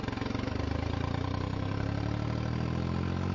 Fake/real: real